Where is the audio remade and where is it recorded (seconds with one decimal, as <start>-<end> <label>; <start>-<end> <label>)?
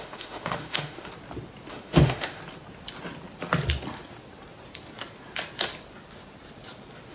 0.0-1.1 remade; 1.1-1.7 recorded; 1.7-2.4 remade; 2.4-7.1 recorded